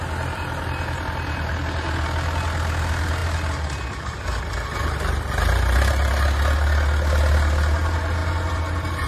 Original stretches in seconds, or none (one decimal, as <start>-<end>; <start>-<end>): 0.0-9.1